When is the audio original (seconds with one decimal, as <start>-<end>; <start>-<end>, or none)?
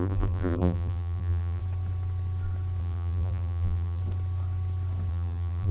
1.6-2.8; 4.0-5.1